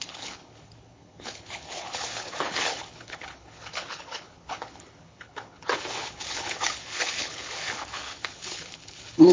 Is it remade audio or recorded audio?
remade